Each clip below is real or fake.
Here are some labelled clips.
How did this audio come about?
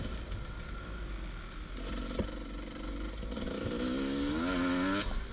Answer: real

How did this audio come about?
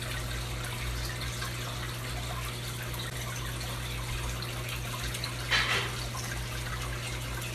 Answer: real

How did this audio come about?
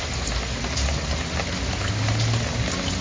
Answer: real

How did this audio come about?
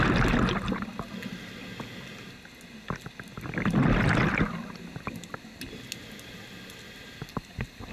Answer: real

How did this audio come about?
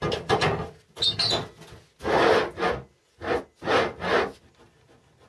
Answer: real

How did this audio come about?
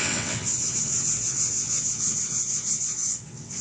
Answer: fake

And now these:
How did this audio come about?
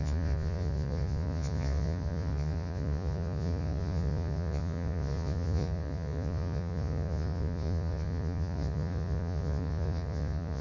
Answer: fake